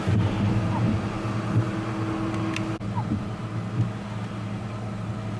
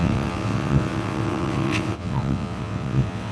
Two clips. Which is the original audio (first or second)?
first